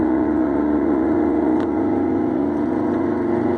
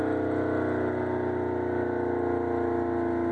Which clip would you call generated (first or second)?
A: first